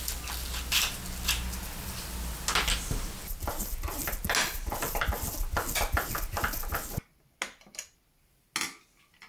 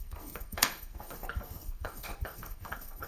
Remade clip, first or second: second